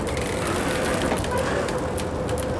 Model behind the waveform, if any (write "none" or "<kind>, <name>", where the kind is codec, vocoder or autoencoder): none